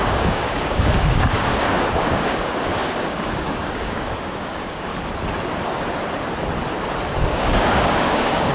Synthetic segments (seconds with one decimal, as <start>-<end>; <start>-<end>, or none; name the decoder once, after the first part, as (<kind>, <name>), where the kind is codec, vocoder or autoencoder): 0.0-4.9 (codec, DAC); 7.2-8.5